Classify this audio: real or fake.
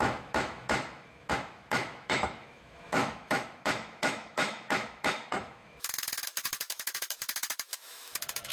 fake